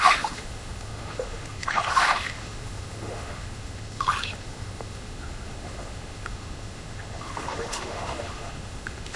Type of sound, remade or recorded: remade